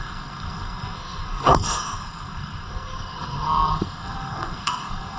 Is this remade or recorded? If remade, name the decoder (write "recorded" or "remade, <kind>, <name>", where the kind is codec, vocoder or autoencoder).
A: remade, codec, SNAC